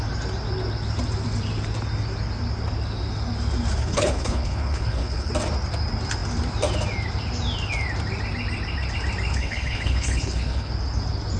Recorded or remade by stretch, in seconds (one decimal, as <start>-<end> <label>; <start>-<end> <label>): 0.0-3.8 recorded; 3.8-5.3 remade; 5.3-9.3 recorded; 9.3-10.7 remade; 10.7-11.4 recorded